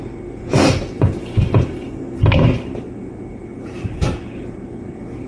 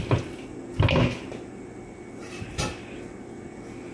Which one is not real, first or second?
first